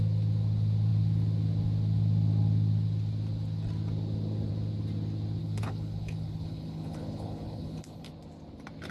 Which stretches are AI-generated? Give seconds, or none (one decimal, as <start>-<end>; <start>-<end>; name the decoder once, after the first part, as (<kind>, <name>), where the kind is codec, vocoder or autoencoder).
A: 5.4-8.1 (codec, HILCodec)